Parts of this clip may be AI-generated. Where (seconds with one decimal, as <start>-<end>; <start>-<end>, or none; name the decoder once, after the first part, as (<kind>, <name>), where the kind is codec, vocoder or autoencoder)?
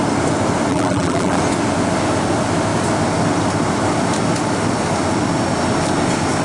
0.7-1.4 (vocoder, BigVGAN v2)